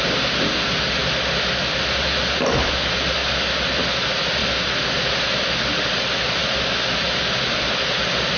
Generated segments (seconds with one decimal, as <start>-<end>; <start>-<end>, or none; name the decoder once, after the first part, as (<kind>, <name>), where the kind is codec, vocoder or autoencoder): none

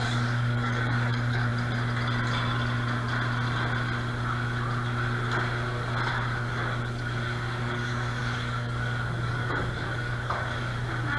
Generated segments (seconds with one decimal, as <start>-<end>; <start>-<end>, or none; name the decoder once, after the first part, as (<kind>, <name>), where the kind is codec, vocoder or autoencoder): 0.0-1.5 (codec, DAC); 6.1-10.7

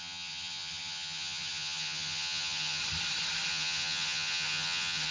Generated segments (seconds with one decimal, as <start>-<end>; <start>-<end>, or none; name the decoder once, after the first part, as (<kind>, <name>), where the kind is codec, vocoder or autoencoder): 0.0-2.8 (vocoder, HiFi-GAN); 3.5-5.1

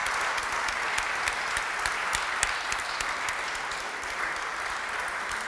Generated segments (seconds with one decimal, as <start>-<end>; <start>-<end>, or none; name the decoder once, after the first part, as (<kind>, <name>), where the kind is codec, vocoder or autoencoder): none

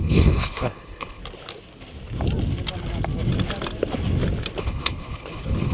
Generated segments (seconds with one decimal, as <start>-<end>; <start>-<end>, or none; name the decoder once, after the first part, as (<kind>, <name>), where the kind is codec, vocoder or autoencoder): 0.0-1.2 (codec, HILCodec); 4.6-5.7

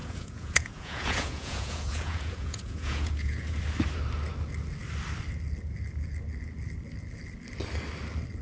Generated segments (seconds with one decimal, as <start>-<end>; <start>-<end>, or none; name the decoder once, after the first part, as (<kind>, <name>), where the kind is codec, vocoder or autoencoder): 0.0-3.6 (vocoder, Vocos)

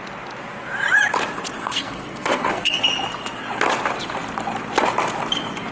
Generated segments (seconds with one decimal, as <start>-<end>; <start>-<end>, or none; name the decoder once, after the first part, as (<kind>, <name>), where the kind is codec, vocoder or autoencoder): 1.6-2.8 (codec, SNAC)

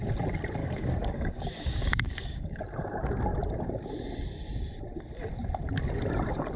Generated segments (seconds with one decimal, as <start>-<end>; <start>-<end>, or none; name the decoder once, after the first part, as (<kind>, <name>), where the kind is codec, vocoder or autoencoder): 0.6-2.6 (codec, DAC)